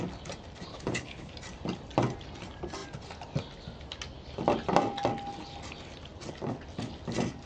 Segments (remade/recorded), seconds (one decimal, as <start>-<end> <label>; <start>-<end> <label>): 0.0-0.7 recorded; 0.7-1.3 remade; 1.3-7.5 recorded